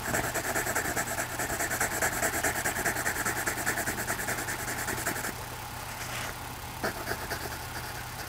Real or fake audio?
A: real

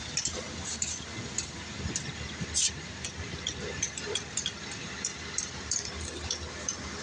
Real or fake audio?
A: real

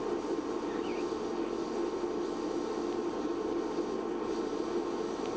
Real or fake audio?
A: real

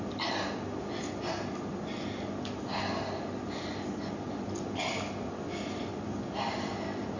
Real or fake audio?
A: real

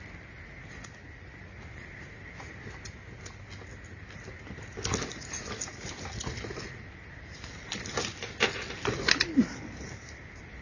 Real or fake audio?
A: real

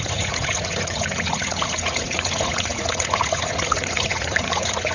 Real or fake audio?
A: fake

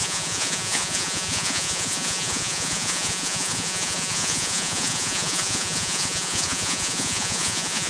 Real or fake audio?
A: fake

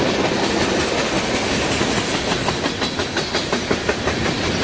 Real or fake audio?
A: real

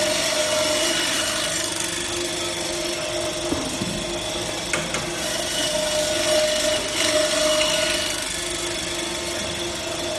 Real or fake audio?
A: real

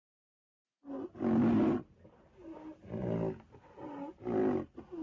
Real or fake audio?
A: real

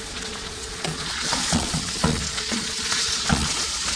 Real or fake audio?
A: fake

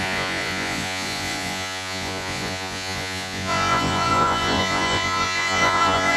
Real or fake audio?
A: fake